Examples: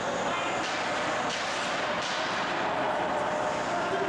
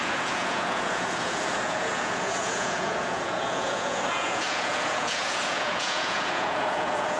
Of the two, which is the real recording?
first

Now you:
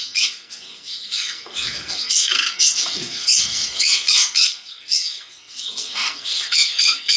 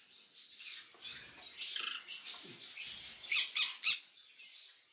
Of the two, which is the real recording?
second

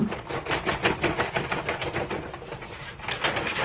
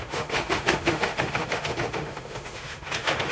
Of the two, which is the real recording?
first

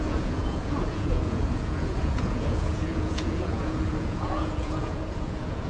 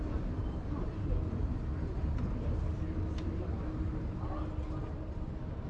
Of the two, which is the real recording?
second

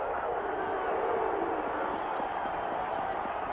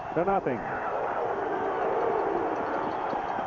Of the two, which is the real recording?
first